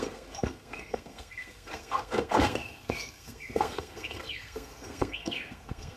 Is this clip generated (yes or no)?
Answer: yes